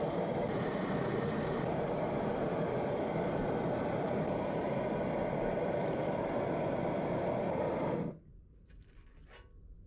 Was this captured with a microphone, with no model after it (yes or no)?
no